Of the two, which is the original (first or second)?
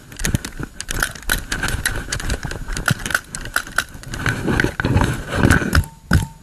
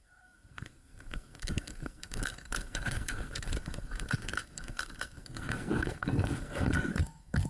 first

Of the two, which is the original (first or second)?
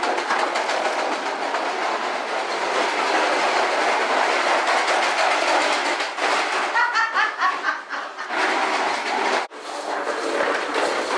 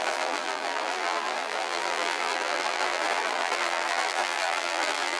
first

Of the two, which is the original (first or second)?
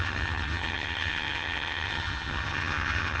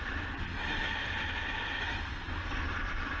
second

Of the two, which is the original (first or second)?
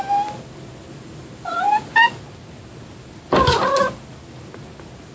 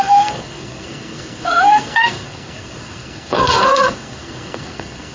first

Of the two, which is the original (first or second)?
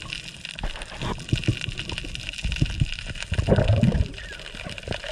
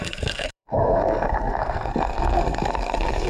first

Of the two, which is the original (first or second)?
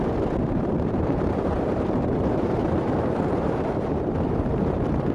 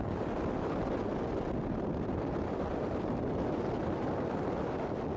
second